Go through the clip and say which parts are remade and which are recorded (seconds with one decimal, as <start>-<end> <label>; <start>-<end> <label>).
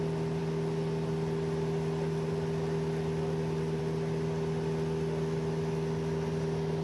0.0-6.8 recorded